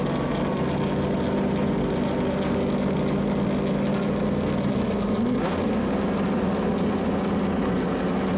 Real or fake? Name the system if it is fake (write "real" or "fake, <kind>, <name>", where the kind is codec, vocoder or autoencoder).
real